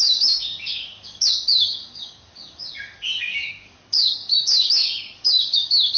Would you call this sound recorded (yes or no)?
no